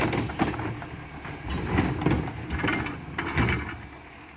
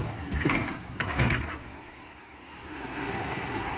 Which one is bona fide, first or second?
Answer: first